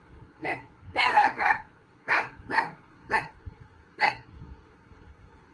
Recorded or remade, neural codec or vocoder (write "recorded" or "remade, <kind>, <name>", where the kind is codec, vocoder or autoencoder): remade, codec, SNAC